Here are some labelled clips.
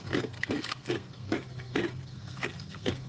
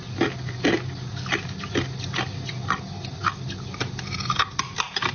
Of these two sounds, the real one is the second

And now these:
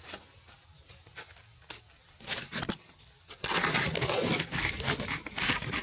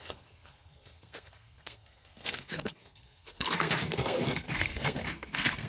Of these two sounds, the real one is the first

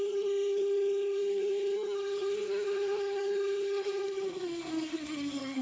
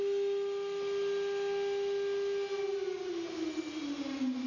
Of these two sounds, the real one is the second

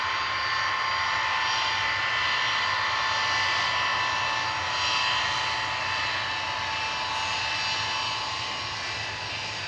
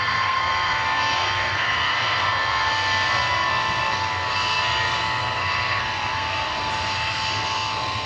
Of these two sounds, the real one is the first